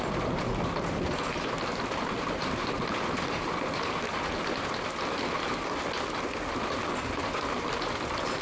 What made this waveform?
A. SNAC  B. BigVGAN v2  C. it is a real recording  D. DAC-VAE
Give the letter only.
C